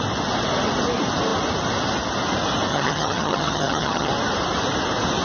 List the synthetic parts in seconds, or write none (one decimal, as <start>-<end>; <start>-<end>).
2.7-4.1